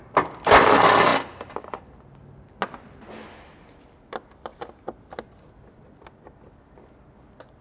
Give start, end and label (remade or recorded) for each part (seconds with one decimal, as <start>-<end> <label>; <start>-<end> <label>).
0.0-7.6 recorded